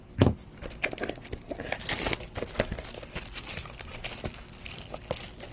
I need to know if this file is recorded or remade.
recorded